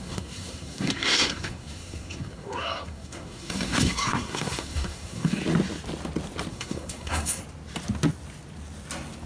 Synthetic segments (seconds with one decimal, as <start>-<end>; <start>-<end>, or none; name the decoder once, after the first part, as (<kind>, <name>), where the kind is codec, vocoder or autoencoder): 0.0-5.4 (codec, SNAC); 6.5-7.4